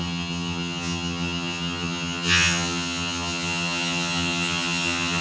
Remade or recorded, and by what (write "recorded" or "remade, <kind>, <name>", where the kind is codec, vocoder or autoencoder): remade, vocoder, HiFi-GAN